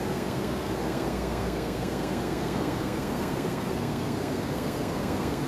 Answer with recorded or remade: remade